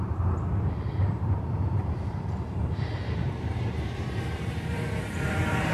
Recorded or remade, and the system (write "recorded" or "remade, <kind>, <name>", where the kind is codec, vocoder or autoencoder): remade, vocoder, BigVGAN v2